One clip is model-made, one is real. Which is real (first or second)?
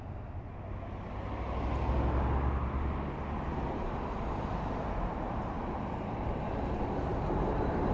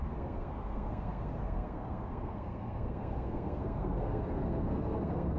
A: first